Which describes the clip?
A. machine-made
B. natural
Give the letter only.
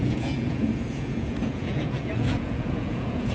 A